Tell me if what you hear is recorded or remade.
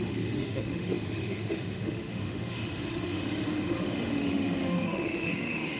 remade